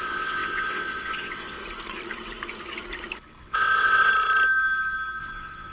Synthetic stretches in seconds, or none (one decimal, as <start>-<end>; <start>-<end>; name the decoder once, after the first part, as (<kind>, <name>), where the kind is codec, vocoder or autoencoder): 0.0-1.6 (vocoder, WaveNeXt); 3.4-4.1; 5.2-5.7